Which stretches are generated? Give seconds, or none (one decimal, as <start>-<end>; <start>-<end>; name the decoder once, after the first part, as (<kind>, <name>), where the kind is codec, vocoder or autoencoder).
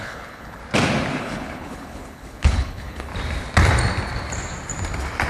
0.0-0.6 (codec, HILCodec); 1.2-3.1